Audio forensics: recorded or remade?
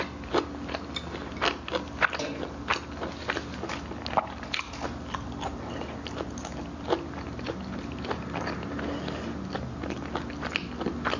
recorded